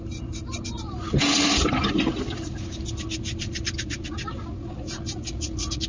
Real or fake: real